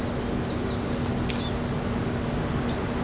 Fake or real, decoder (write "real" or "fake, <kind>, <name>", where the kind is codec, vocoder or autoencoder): real